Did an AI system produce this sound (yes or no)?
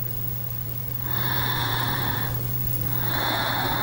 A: yes